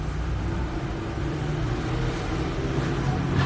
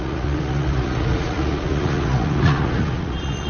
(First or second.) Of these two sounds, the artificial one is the second